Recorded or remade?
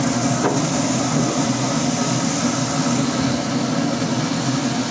recorded